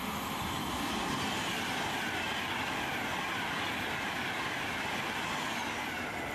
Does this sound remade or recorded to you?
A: recorded